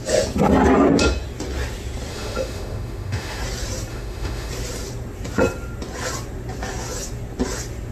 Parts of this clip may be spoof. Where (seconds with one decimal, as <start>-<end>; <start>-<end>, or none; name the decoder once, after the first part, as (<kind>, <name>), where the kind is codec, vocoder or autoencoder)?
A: 2.1-3.4 (autoencoder, DAC-VAE); 3.9-4.5